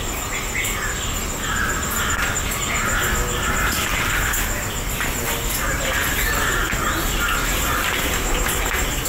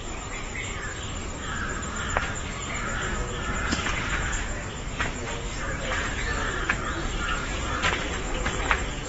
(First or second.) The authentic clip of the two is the first